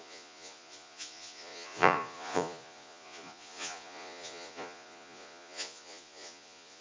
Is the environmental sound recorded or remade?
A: remade